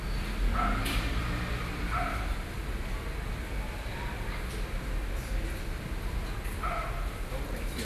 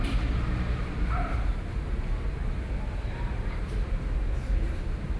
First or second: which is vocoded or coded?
second